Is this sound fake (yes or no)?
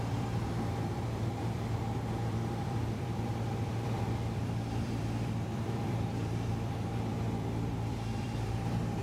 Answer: yes